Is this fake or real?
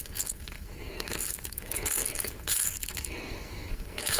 fake